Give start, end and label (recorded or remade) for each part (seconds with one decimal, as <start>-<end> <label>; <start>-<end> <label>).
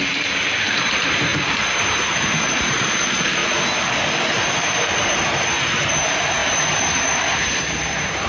0.0-1.3 remade; 1.3-1.8 recorded; 1.8-3.4 remade; 3.4-6.0 recorded; 6.0-8.3 remade